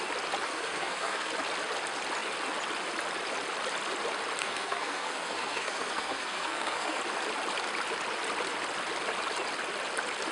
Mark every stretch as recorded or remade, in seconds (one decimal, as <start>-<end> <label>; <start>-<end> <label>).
0.0-0.5 recorded; 0.5-1.3 remade; 1.3-4.4 recorded; 4.4-7.0 remade; 7.0-10.3 recorded

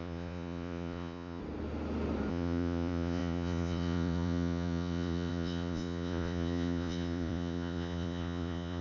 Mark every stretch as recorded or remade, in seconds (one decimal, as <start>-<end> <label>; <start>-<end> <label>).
0.0-1.4 remade; 1.4-2.3 recorded; 2.3-8.8 remade

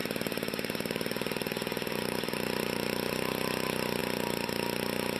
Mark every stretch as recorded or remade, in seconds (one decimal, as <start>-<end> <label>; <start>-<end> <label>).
0.0-3.1 remade; 3.1-5.2 recorded

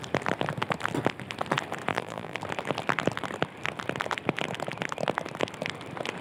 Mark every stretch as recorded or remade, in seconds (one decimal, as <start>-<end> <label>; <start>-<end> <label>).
0.0-1.9 recorded; 1.9-2.4 remade; 2.4-6.2 recorded

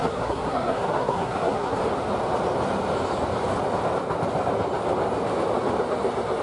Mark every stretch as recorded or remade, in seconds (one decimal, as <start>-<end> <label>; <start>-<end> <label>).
0.0-1.8 remade; 1.8-6.4 recorded

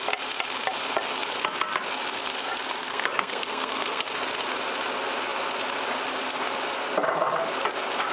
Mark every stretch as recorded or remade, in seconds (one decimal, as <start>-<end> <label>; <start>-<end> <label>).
0.0-2.8 recorded; 2.8-4.0 remade; 4.0-8.1 recorded

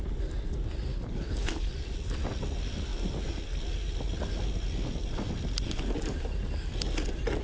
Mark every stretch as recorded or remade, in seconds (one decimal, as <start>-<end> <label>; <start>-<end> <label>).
0.0-0.9 recorded; 0.9-1.7 remade; 1.7-7.4 recorded

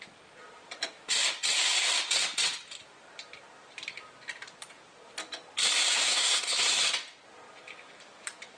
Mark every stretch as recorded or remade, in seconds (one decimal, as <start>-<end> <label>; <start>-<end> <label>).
0.0-6.0 recorded; 6.0-6.8 remade; 6.8-8.6 recorded